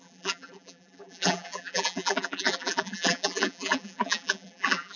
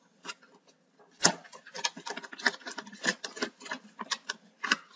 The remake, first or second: first